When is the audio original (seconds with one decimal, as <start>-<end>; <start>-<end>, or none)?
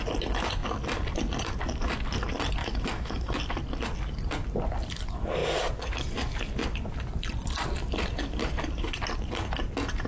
0.0-2.6; 3.4-10.1